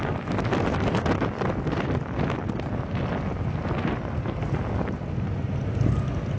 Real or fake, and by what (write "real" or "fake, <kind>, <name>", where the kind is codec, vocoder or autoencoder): real